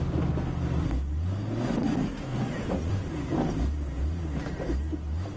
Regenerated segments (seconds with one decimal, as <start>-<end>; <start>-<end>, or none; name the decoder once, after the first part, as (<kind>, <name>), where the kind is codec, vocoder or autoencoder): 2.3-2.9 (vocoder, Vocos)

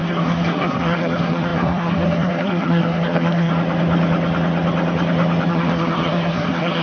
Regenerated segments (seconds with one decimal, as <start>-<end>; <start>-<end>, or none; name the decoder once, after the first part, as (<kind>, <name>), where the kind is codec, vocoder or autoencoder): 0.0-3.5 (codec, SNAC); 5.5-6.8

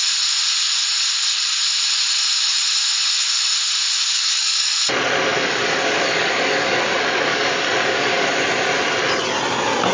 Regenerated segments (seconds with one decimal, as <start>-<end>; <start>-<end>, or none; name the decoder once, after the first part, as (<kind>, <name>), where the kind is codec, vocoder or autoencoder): 4.0-4.8 (codec, DAC); 5.3-8.4

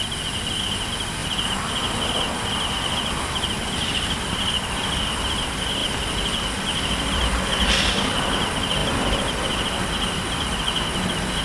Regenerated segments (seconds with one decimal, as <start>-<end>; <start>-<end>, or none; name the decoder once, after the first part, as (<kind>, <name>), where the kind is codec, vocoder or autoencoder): 5.8-7.8 (vocoder, BigVGAN v2); 8.8-10.6

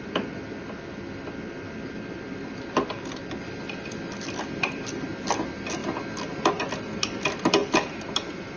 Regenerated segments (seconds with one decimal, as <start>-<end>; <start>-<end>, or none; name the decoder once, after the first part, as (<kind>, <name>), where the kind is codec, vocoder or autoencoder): none

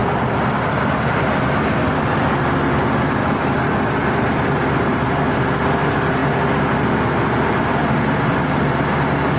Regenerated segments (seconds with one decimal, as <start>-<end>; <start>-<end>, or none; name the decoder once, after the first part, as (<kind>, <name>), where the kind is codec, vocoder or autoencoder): 0.0-2.2 (vocoder, BigVGAN v2); 3.2-5.0